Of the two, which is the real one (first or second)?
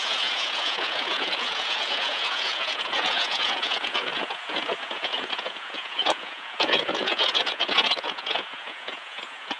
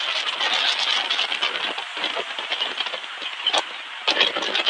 second